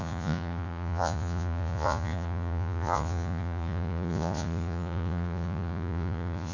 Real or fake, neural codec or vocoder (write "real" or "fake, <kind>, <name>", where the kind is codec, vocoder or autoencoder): fake, vocoder, Vocos